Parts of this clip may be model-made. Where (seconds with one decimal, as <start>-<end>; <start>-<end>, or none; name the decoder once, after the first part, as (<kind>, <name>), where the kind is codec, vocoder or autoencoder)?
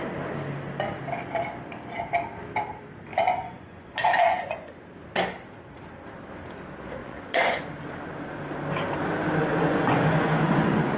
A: 3.1-4.7 (vocoder, Vocos); 7.0-7.6; 9.5-11.0